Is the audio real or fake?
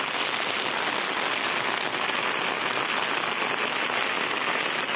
real